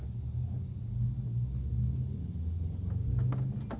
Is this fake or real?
real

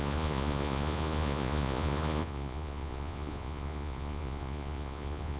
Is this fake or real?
fake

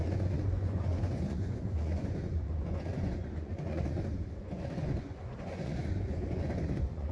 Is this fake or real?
fake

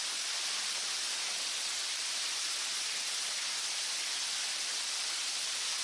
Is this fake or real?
real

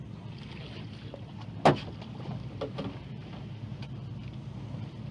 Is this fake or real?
real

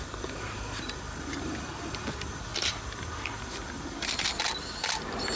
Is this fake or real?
real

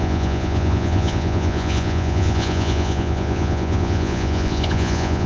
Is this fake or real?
fake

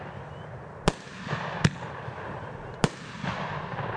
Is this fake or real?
real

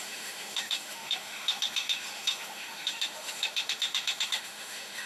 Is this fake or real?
fake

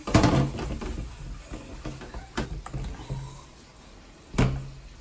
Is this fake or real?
real